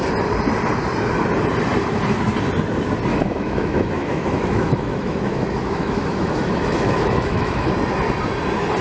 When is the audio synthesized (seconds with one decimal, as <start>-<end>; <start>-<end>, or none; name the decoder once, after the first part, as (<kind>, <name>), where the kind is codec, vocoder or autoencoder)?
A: 3.1-7.7 (autoencoder, DAC-VAE)